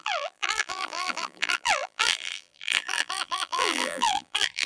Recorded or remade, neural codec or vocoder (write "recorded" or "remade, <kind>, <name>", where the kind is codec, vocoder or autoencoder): remade, vocoder, BigVGAN v2